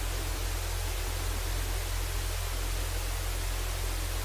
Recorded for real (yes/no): yes